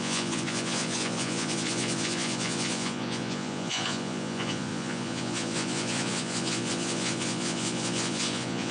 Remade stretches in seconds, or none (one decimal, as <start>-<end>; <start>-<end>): 0.0-8.7